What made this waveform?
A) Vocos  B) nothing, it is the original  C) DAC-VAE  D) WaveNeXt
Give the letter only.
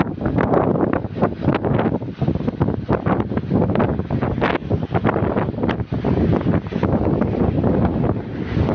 B